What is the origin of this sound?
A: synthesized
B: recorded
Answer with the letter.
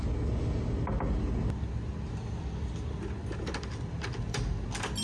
B